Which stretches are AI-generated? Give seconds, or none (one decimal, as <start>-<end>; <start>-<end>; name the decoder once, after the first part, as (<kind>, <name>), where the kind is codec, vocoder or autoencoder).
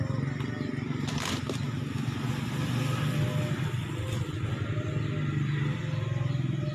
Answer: none